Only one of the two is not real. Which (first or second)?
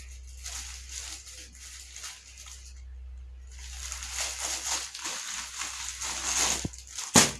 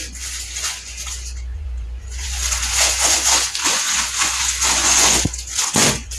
second